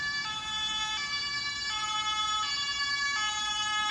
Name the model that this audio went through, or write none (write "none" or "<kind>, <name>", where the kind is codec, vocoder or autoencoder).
none